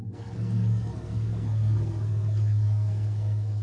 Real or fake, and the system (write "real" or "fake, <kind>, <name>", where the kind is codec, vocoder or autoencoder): fake, codec, SNAC